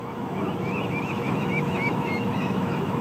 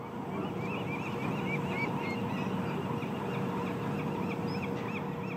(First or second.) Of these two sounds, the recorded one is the second